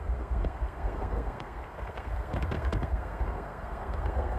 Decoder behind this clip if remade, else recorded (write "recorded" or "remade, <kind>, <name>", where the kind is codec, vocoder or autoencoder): remade, codec, SNAC